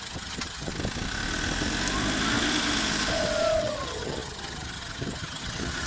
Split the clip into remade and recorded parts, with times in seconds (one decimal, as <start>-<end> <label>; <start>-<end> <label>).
0.0-0.7 remade; 0.7-3.6 recorded; 3.6-5.9 remade